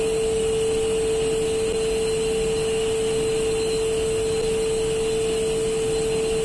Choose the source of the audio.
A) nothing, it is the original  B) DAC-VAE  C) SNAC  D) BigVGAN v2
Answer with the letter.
A